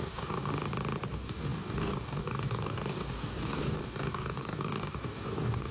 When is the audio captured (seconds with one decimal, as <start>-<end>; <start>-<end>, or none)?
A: 0.5-1.1

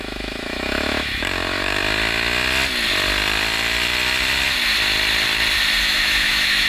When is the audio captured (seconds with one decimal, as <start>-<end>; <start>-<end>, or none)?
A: 1.8-5.8